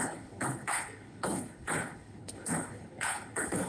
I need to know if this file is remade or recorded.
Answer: remade